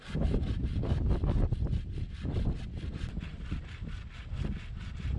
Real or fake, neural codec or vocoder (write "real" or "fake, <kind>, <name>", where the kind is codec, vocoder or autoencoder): real